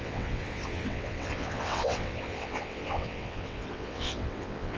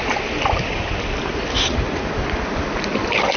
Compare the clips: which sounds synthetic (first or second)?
first